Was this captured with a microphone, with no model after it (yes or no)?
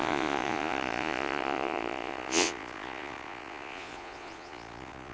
no